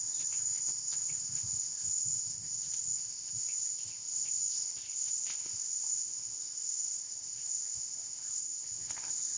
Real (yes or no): no